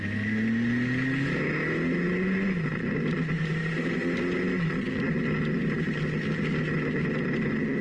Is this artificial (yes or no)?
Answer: no